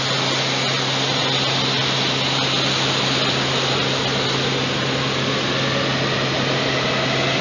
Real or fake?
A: real